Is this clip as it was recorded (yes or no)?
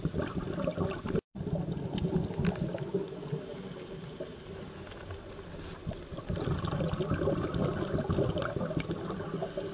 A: yes